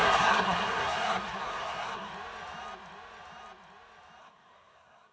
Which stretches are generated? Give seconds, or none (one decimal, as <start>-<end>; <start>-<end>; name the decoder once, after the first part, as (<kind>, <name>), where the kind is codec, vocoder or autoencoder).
0.0-2.1 (codec, SNAC); 4.2-5.1